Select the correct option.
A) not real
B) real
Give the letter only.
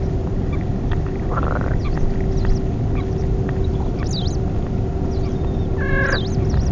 B